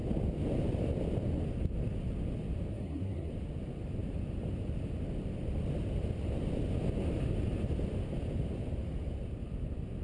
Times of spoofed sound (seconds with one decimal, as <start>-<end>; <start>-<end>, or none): 2.7-3.3